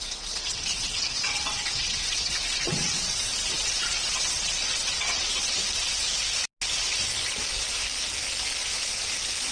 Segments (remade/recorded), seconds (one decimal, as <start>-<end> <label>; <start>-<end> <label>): 0.0-5.6 remade; 5.6-9.5 recorded